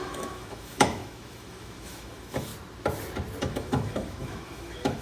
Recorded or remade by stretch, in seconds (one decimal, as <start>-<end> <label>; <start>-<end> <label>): 0.0-2.5 remade; 2.5-3.4 recorded; 3.4-5.0 remade